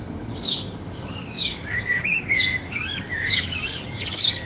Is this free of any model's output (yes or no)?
no